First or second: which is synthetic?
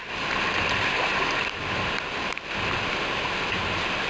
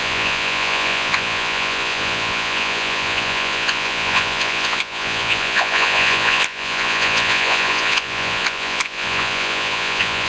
second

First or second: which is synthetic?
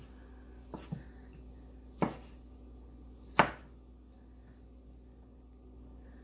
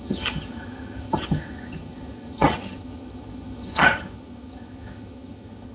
second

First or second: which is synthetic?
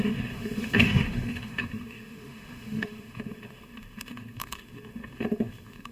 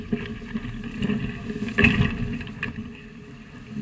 first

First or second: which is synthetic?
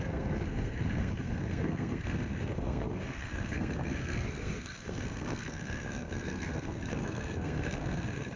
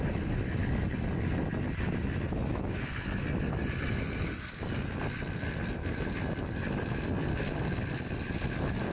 first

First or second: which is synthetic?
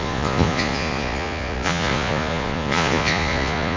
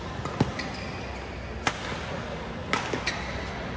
first